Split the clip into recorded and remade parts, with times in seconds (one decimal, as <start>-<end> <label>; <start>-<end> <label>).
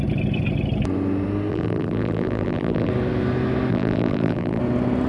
0.0-1.5 recorded; 1.5-2.9 remade; 2.9-3.7 recorded; 3.7-4.6 remade; 4.6-5.1 recorded